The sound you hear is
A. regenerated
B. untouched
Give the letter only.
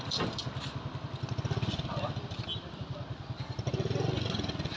B